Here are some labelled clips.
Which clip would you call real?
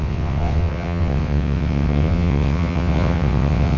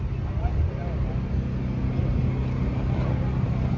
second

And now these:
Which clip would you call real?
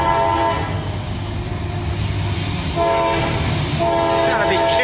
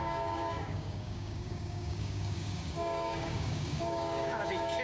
first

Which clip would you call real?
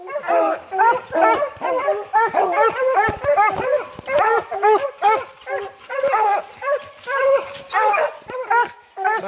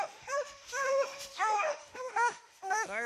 first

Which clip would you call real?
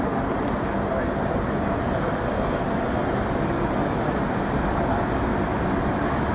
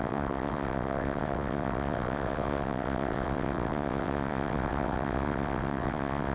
first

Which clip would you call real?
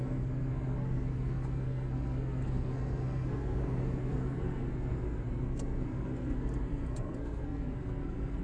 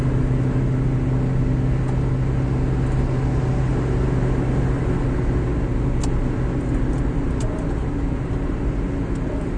second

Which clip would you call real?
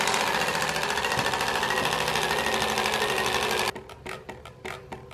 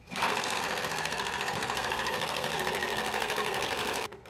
first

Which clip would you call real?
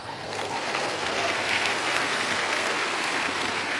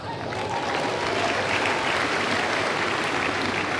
second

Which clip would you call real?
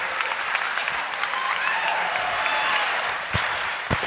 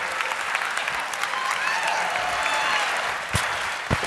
second